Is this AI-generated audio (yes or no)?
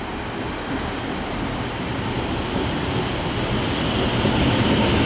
no